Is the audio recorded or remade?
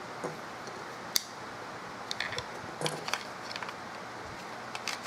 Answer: recorded